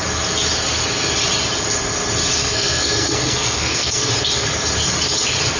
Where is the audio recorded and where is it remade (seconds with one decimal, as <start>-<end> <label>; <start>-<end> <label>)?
0.0-2.4 recorded; 2.4-4.1 remade; 4.1-5.6 recorded

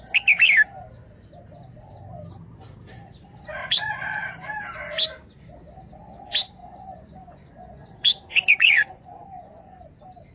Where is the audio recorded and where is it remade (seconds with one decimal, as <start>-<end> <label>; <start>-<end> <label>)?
0.0-3.6 recorded; 3.6-4.2 remade; 4.2-6.6 recorded; 6.6-9.9 remade; 9.9-10.3 recorded